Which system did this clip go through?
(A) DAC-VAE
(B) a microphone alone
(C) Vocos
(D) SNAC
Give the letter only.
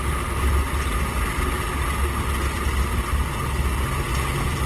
B